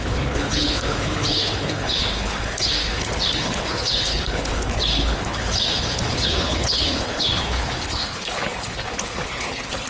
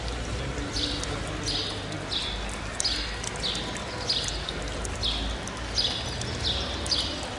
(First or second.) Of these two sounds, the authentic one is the second